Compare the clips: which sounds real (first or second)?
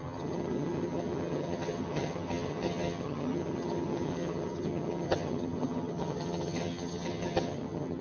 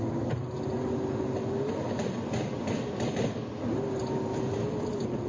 second